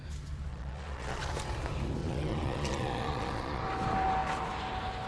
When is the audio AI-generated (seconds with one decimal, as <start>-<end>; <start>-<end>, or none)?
0.5-1.2; 2.0-3.6

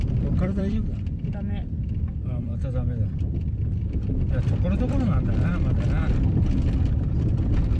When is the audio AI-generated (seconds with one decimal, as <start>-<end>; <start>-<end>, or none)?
0.0-2.5; 3.4-5.5; 6.1-7.8

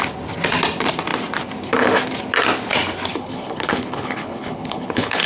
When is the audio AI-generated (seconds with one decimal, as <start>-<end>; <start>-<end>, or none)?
3.1-5.3

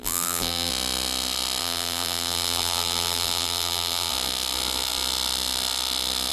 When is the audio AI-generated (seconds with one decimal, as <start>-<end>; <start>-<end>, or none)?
0.0-0.7; 1.6-4.1

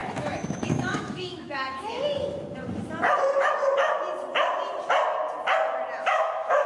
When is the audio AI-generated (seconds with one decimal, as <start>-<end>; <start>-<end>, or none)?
0.0-2.0; 6.0-6.7

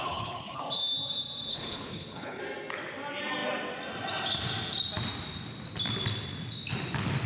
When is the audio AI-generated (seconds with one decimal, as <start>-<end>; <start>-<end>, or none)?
0.0-0.6; 1.5-2.4

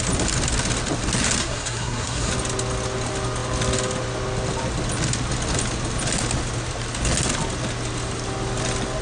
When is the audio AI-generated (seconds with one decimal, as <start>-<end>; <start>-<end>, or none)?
1.4-2.3

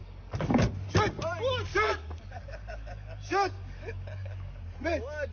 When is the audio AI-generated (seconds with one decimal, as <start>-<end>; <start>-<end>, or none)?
0.0-0.7; 1.7-4.6